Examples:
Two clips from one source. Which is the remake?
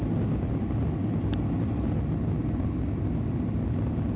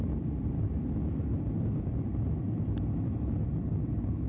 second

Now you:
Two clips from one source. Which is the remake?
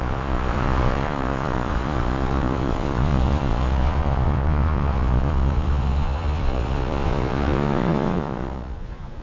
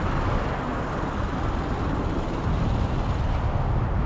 first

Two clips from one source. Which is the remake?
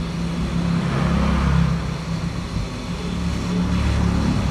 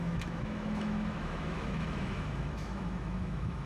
second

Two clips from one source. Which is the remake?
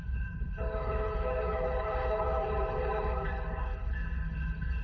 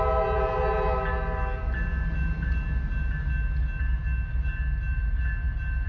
first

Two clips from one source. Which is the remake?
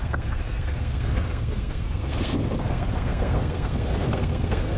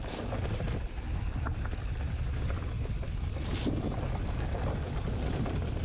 first